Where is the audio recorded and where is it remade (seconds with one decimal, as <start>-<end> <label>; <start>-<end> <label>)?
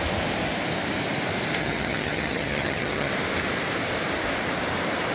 0.0-1.6 recorded; 1.6-3.1 remade; 3.1-5.1 recorded